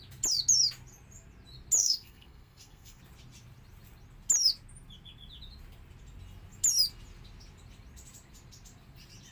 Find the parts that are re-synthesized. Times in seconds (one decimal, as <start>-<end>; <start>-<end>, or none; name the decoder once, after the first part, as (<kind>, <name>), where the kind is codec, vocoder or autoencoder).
1.8-3.0 (codec, SNAC)